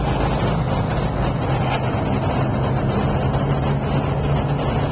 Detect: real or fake real